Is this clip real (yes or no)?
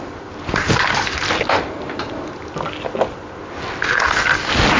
yes